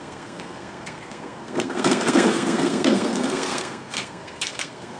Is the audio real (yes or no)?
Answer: no